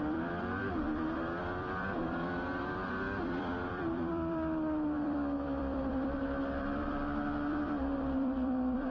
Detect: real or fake fake